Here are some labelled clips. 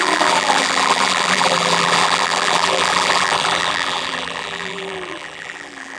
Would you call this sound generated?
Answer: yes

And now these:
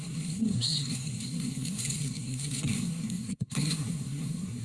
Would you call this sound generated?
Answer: yes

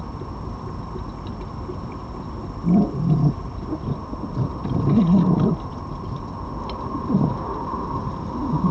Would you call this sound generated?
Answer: no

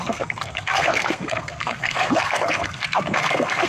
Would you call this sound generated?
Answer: yes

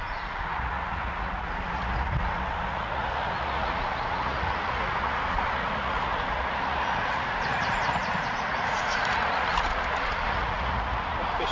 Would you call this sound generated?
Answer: yes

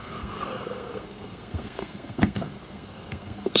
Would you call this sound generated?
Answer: yes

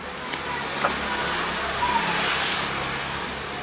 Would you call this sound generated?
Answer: no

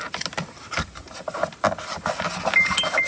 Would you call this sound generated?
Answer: no